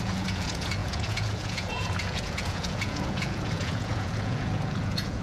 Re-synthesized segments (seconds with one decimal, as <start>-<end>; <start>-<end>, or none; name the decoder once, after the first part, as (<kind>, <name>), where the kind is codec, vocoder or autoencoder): 0.0-5.2 (vocoder, Vocos)